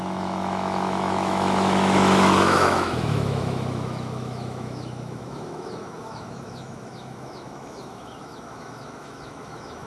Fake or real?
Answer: fake